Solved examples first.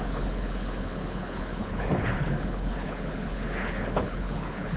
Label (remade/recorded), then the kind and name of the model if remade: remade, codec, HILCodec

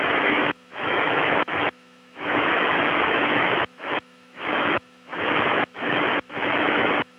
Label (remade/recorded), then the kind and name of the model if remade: remade, autoencoder, DAC-VAE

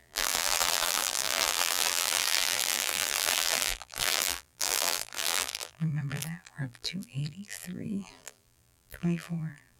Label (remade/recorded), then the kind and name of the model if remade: remade, vocoder, BigVGAN v2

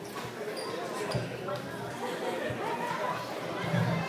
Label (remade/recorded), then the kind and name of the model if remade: recorded